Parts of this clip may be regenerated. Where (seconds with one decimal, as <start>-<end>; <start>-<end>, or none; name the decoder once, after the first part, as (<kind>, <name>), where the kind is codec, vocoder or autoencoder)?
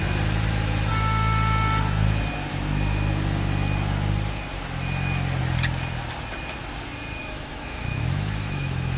7.2-9.0 (autoencoder, DAC-VAE)